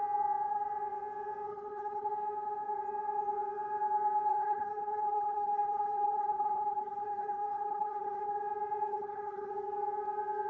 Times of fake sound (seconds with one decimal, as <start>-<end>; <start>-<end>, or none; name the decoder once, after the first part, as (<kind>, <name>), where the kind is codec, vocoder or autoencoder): 1.5-2.1 (codec, HILCodec); 4.3-8.3; 8.9-9.5